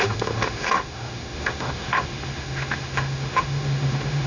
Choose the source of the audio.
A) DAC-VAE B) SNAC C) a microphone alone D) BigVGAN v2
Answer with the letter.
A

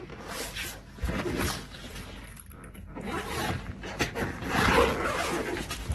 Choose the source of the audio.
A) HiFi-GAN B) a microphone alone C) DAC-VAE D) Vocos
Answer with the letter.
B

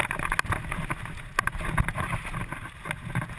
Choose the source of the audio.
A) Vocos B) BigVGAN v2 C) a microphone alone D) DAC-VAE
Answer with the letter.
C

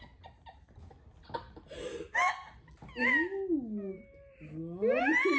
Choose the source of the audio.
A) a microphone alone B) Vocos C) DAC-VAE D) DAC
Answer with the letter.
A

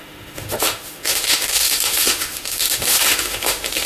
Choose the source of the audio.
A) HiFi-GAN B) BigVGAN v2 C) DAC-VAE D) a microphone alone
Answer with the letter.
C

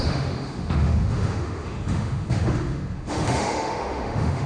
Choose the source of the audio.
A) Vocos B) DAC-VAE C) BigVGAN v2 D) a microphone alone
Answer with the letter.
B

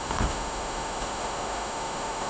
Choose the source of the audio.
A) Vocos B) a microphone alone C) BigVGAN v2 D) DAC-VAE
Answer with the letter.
D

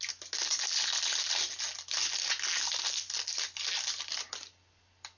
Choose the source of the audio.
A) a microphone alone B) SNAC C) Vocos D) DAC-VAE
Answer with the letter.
A